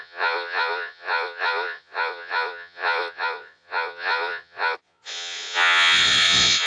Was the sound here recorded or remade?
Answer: remade